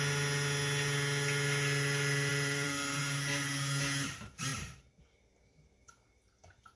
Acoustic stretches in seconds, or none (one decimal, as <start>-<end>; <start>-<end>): 0.0-2.3; 3.0-6.8